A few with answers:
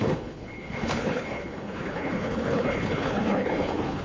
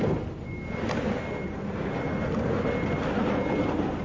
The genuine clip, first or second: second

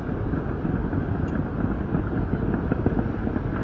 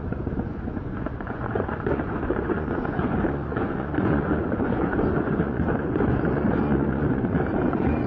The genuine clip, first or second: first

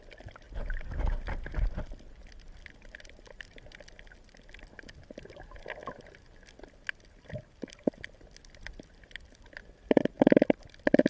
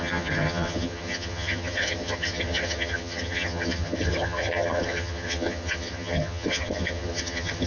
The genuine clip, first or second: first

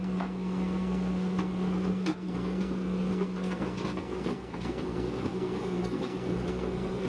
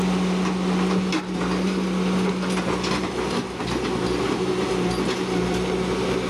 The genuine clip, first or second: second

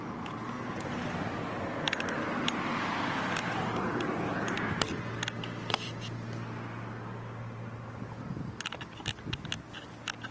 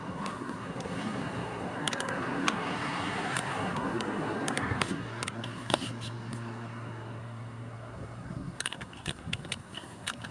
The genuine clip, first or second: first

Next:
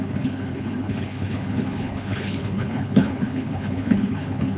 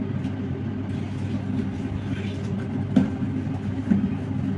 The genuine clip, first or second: second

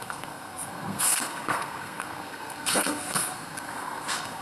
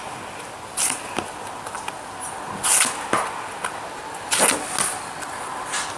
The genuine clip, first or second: second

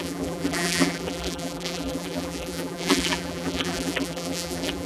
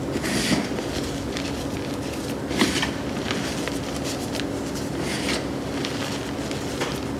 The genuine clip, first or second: second